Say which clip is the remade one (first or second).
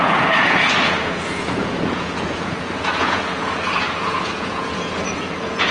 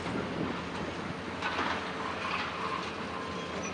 first